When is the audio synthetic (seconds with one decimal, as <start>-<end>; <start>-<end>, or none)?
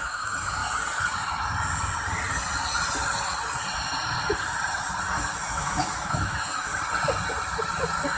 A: 0.0-0.6; 5.5-6.7